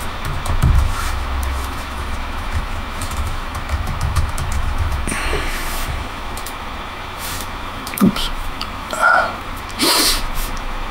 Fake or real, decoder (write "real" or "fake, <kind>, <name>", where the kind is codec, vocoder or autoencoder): fake, autoencoder, DAC-VAE